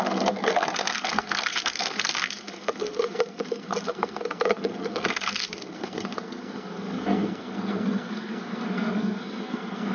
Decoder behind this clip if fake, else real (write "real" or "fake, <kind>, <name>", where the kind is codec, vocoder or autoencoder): fake, codec, SNAC